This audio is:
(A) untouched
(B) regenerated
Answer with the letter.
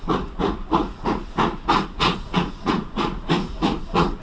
B